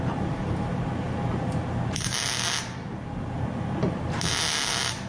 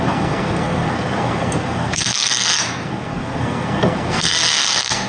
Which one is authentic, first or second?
first